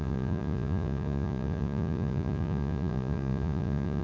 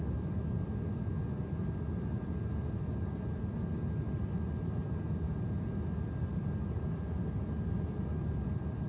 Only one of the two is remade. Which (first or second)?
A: first